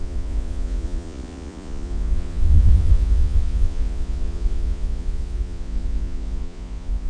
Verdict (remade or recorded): remade